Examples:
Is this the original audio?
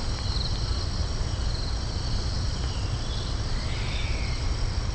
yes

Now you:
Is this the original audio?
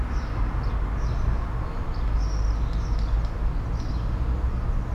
yes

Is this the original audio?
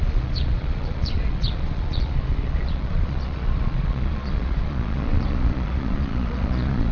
no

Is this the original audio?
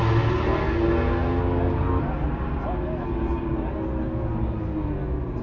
yes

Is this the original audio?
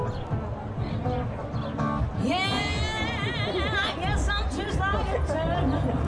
yes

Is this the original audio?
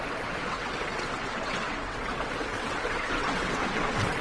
no